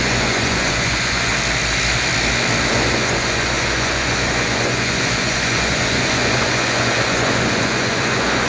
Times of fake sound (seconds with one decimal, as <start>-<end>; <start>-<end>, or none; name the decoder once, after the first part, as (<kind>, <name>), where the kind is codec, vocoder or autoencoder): 0.0-1.3 (vocoder, Vocos); 2.7-8.5